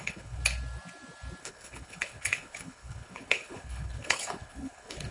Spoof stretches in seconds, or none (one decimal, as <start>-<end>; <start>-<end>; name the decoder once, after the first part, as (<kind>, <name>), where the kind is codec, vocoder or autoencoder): 0.0-0.4 (codec, HILCodec); 1.4-5.1